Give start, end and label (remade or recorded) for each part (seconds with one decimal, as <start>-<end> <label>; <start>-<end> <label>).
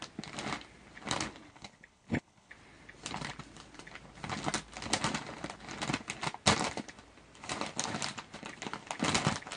0.0-1.5 recorded; 1.5-2.5 remade; 2.5-9.6 recorded